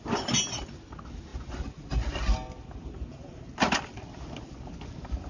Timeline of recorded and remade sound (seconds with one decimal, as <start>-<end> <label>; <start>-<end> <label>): 0.0-5.3 recorded